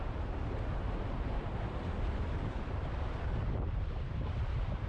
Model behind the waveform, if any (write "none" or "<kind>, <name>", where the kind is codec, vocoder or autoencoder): vocoder, BigVGAN v2